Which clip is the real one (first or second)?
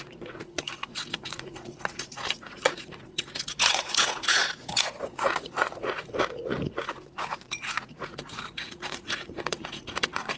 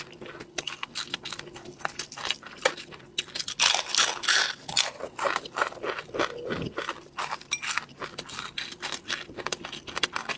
second